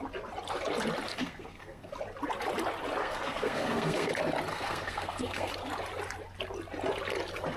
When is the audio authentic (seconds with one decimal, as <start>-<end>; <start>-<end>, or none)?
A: 0.0-1.1; 1.9-3.0; 4.1-4.5; 5.5-7.6